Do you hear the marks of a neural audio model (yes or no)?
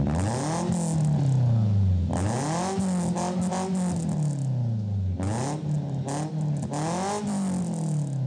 no